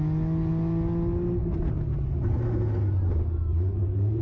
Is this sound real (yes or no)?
yes